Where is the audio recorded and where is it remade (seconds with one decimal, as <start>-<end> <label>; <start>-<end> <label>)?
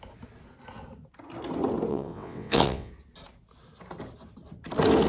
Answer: 0.0-1.9 recorded; 1.9-2.9 remade; 2.9-5.1 recorded